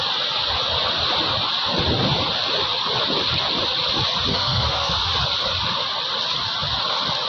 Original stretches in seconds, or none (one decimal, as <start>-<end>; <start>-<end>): 0.0-4.3; 4.9-7.3